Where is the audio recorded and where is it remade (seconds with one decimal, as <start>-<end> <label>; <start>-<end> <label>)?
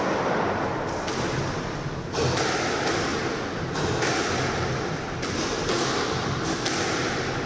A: 0.0-6.2 recorded; 6.2-6.8 remade; 6.8-7.5 recorded